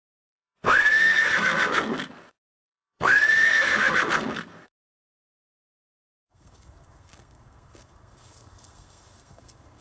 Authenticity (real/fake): fake